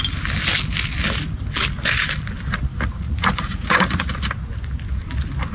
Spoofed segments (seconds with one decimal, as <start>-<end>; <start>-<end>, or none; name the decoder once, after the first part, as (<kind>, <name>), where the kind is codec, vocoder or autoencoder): 2.7-4.1 (vocoder, Vocos)